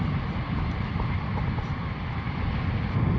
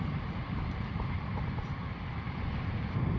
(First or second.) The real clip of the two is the first